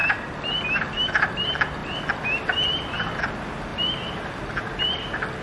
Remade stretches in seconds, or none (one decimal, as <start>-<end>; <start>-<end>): none